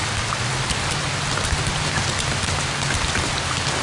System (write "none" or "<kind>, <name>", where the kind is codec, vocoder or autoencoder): none